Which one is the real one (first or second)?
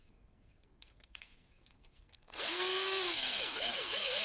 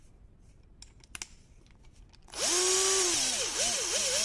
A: second